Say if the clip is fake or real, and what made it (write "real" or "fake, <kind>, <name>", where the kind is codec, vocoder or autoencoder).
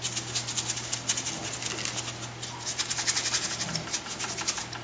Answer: real